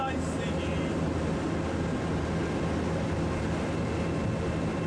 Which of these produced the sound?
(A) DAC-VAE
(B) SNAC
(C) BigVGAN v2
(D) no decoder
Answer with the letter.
D